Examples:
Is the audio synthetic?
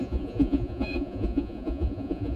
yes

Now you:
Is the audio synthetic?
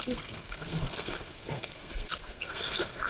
yes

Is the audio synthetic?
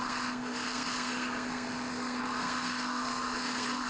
yes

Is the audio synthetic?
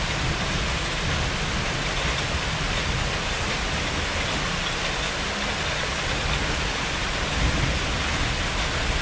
no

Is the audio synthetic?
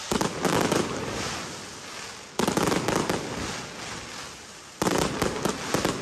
no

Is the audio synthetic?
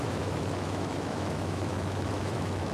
yes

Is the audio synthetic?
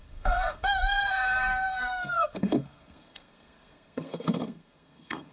yes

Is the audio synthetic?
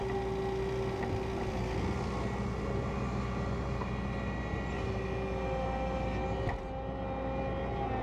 no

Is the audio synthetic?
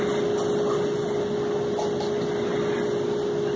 no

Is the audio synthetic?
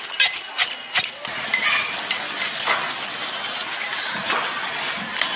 no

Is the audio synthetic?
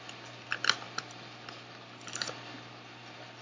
no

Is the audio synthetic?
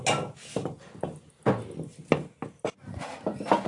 no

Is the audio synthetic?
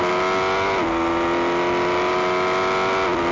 no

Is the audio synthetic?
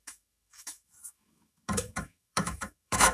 yes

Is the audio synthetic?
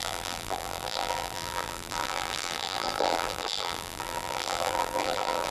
yes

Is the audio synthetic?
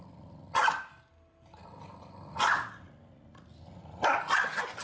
no